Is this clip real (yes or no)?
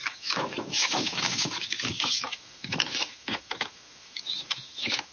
no